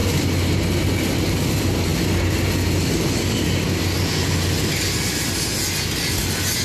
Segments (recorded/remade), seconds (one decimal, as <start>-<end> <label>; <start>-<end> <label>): 0.0-6.6 recorded